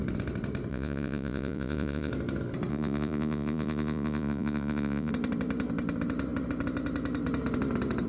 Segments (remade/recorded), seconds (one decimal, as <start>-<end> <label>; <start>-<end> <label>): 0.0-0.7 recorded; 0.7-2.1 remade; 2.1-2.7 recorded; 2.7-5.1 remade; 5.1-8.1 recorded